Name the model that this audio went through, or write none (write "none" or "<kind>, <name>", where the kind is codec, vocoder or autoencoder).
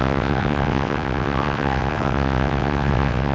vocoder, WaveNeXt